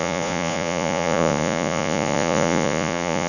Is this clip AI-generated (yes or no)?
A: yes